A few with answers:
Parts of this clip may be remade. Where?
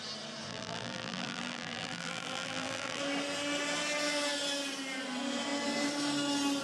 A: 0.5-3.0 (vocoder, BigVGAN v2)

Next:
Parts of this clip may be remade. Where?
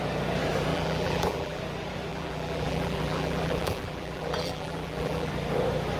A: 0.7-1.6 (vocoder, BigVGAN v2); 2.1-5.3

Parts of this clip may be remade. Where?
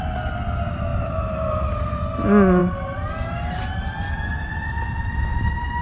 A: 0.9-1.7 (vocoder, BigVGAN v2)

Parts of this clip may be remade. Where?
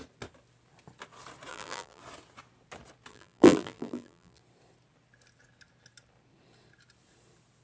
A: 1.5-2.0 (vocoder, BigVGAN v2); 3.1-4.4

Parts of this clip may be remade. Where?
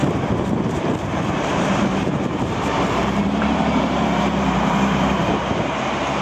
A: 0.0-6.2 (vocoder, BigVGAN v2)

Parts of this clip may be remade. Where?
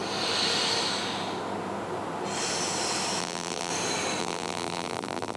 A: 3.2-3.7 (vocoder, BigVGAN v2); 4.2-5.4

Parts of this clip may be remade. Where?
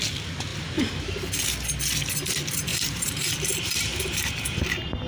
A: 2.7-4.4 (vocoder, BigVGAN v2)